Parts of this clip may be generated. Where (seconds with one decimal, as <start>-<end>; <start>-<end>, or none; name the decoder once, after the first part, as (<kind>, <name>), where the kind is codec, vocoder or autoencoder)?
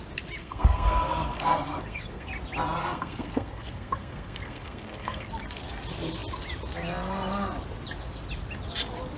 0.4-2.3 (codec, SNAC); 2.8-5.3